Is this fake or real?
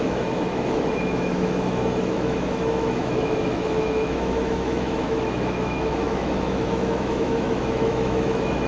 fake